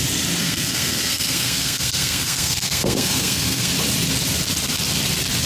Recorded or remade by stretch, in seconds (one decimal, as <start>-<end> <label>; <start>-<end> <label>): 0.0-0.4 recorded; 0.4-3.7 remade; 3.7-5.5 recorded